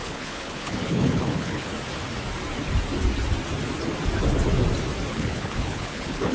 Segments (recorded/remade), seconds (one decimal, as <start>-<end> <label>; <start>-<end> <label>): 0.0-1.7 remade; 1.7-5.1 recorded; 5.1-6.3 remade